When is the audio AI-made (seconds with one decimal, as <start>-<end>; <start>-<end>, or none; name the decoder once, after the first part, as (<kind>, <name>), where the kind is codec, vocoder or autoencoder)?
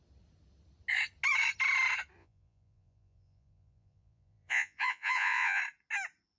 2.2-5.6 (vocoder, Vocos)